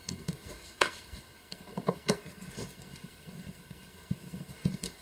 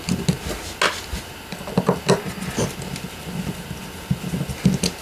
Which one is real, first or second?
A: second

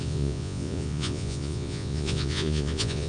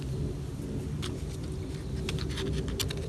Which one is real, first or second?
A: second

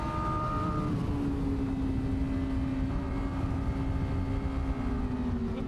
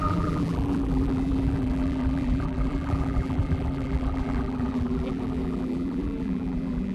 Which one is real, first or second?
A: first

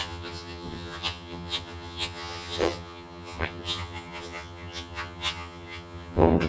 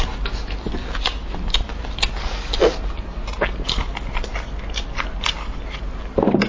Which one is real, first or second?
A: second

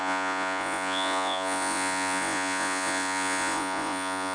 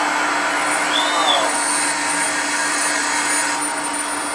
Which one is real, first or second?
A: second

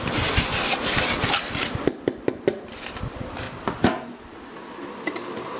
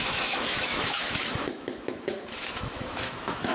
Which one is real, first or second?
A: first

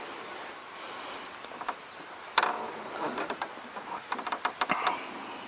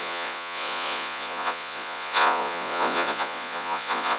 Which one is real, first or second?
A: first